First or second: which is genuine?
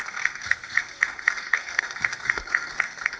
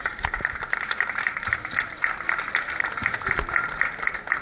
second